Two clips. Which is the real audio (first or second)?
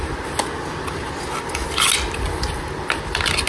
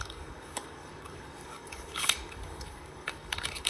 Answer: first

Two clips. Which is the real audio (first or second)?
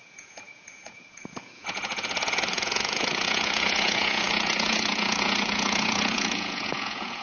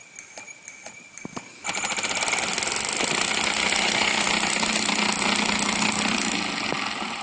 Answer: second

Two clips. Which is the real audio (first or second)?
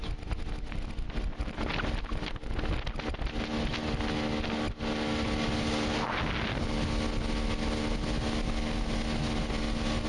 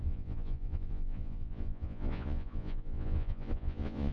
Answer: first